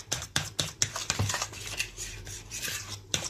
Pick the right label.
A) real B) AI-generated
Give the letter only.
B